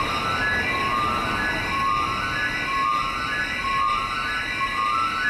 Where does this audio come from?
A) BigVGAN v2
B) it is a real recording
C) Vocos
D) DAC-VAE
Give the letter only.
B